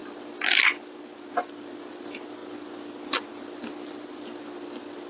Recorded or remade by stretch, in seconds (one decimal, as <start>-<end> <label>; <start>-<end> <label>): 0.0-5.1 recorded